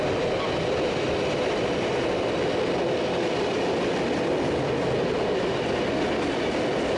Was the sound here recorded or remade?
recorded